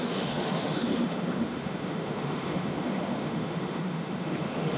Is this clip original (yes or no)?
no